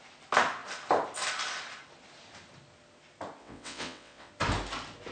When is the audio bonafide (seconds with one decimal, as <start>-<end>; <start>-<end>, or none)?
0.0-3.4; 4.3-5.1